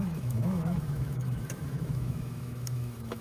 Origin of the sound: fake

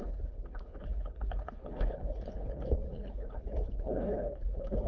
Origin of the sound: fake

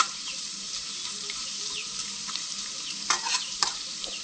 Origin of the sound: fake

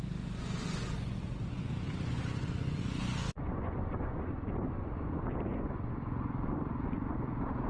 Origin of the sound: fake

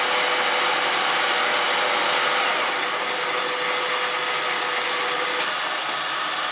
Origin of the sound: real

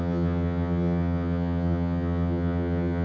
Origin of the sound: fake